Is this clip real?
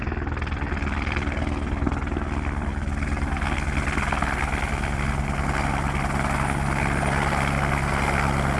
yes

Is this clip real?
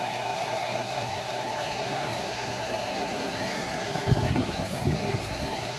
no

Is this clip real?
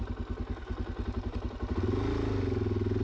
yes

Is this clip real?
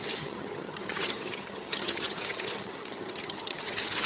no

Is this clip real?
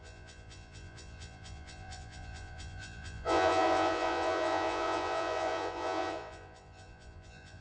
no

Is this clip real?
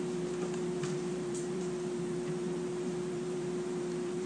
no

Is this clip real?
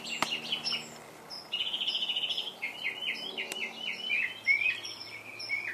yes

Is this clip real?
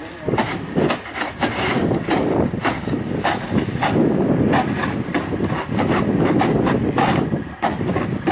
yes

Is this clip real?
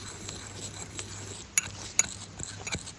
yes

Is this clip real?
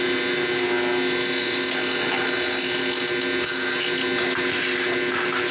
yes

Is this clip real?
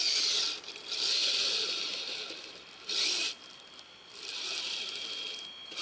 yes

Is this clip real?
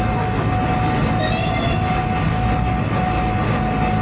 yes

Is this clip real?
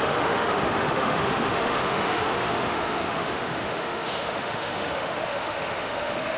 no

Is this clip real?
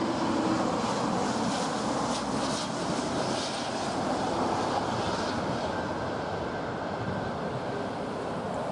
yes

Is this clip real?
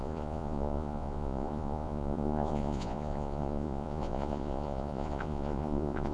no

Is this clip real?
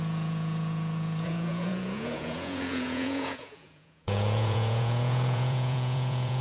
no